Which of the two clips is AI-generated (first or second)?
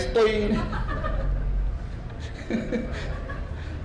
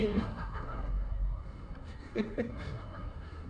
second